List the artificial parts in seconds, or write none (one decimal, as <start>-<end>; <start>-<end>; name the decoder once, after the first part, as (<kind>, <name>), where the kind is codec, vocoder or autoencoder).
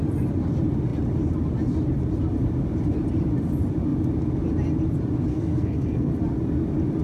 5.3-6.1 (codec, SNAC)